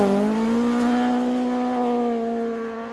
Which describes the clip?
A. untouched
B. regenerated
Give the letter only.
A